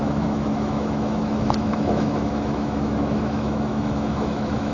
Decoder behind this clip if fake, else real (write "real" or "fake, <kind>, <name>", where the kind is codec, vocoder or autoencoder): fake, autoencoder, DAC-VAE